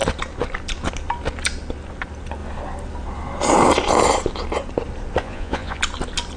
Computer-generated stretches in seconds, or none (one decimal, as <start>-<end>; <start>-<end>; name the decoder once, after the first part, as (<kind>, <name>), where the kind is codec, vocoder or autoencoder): 5.2-5.8 (vocoder, Vocos)